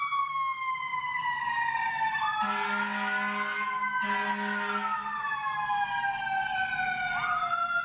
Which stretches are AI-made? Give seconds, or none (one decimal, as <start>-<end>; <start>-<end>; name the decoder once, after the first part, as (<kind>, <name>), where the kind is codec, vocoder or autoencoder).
0.0-2.0 (codec, DAC); 5.2-6.7